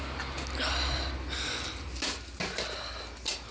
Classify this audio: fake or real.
real